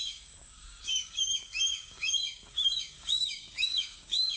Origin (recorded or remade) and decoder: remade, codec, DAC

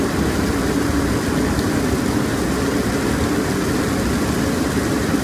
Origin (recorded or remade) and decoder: recorded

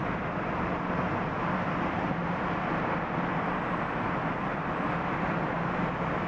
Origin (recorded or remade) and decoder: recorded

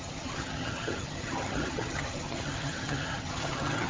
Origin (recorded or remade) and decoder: remade, vocoder, HiFi-GAN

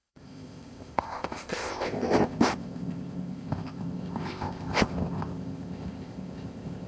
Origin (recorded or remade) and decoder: remade, codec, ZipCodec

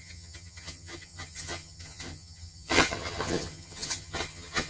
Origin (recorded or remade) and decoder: remade, vocoder, HiFi-GAN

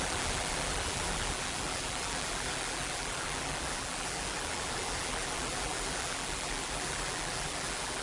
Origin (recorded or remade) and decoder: remade, vocoder, BigVGAN v2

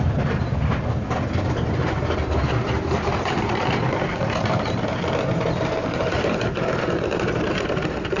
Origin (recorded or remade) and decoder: remade, vocoder, BigVGAN v2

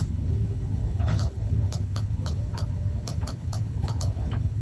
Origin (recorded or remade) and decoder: remade, codec, HILCodec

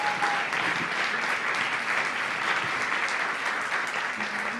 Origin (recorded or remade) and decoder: recorded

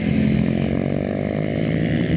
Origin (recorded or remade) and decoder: recorded